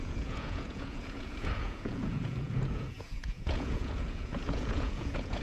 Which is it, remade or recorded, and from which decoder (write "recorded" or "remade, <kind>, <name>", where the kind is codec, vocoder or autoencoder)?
remade, vocoder, Vocos